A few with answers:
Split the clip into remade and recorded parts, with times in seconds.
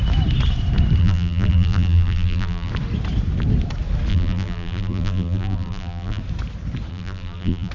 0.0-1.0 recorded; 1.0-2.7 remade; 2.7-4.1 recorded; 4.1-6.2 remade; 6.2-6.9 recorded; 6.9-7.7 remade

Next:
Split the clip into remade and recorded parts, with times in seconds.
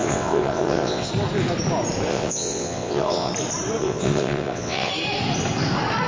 0.0-1.1 remade; 1.1-2.1 recorded; 2.1-3.3 remade; 3.3-3.8 recorded; 3.8-4.9 remade; 4.9-6.1 recorded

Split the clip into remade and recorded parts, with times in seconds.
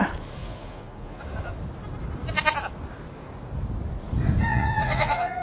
0.0-0.4 recorded; 0.4-1.2 remade; 1.2-4.5 recorded; 4.5-5.4 remade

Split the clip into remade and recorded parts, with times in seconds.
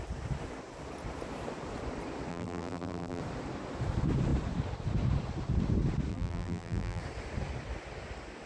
0.0-2.3 recorded; 2.3-3.2 remade; 3.2-6.1 recorded; 6.1-7.0 remade; 7.0-8.5 recorded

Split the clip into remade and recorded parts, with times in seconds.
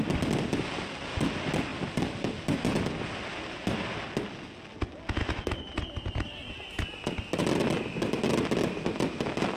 0.0-9.6 recorded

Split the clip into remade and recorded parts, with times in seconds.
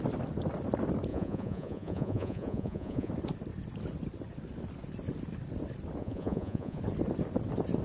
0.0-1.1 recorded; 1.1-3.1 remade; 3.1-6.0 recorded; 6.0-6.8 remade; 6.8-7.8 recorded